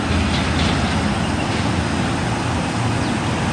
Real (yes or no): yes